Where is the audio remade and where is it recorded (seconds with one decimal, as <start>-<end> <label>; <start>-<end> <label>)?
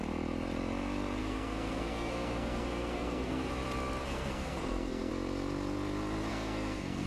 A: 0.0-1.2 recorded; 1.2-3.5 remade; 3.5-4.0 recorded; 4.0-5.1 remade; 5.1-6.3 recorded; 6.3-7.1 remade